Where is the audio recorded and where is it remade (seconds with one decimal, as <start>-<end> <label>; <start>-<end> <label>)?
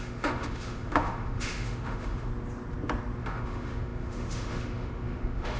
0.0-2.3 remade; 2.3-3.2 recorded; 3.2-5.6 remade